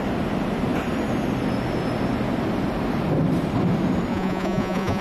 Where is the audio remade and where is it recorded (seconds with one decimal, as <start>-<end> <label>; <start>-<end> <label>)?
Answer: 0.0-4.1 recorded; 4.1-5.0 remade